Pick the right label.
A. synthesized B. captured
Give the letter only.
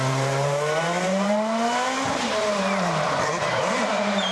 A